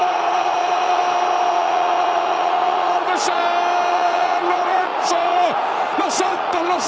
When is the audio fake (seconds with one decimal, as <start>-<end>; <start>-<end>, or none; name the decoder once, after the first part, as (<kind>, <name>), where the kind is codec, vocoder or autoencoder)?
0.0-1.0 (vocoder, Vocos); 1.5-3.4; 3.9-6.9